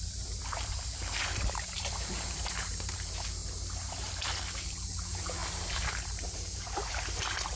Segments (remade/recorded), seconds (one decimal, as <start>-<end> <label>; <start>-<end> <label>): 0.0-3.4 remade; 3.4-4.6 recorded; 4.6-5.4 remade; 5.4-5.9 recorded; 5.9-7.6 remade